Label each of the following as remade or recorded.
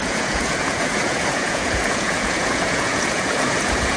remade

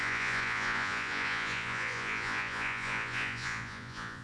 remade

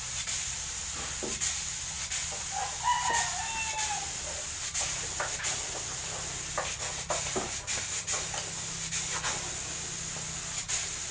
recorded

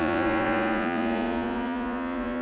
remade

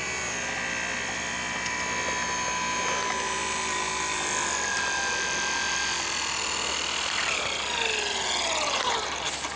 recorded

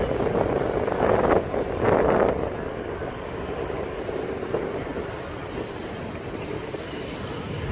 recorded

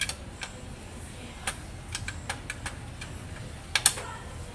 recorded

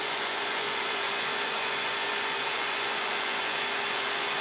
remade